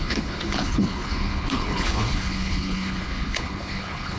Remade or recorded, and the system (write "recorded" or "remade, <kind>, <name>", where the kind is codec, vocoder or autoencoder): remade, codec, HILCodec